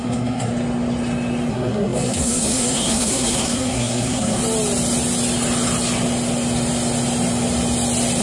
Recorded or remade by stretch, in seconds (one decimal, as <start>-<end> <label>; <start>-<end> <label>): 0.0-0.5 remade; 0.5-1.5 recorded; 1.5-4.4 remade; 4.4-8.2 recorded